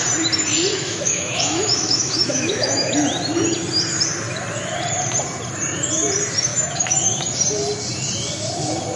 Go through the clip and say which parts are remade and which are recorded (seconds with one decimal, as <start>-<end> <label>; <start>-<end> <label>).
0.0-0.7 recorded; 0.7-2.9 remade; 2.9-6.5 recorded; 6.5-7.0 remade; 7.0-9.0 recorded